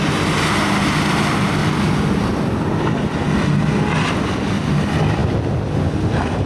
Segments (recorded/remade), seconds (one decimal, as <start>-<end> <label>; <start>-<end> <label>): 0.0-6.5 recorded